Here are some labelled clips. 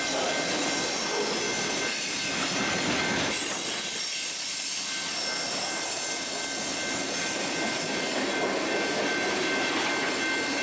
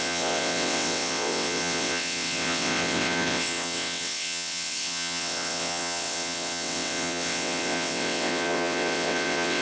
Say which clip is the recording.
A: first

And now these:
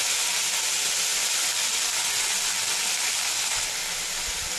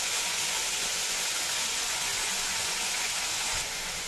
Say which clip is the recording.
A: first